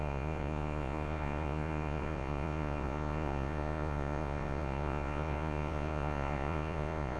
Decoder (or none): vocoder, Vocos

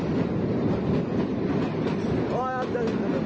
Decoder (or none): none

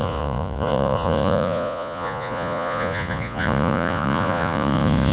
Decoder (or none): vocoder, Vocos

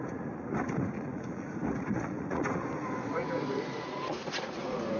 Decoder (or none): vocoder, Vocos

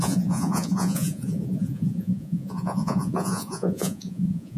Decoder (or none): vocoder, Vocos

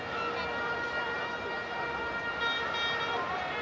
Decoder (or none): none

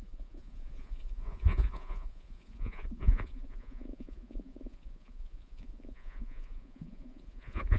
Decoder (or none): vocoder, Vocos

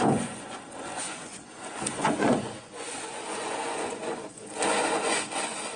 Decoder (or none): vocoder, Vocos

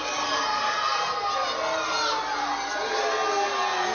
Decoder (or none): none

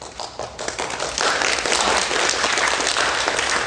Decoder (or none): none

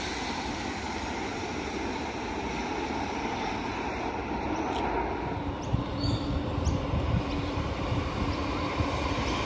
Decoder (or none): none